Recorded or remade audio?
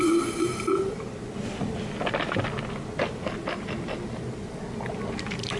recorded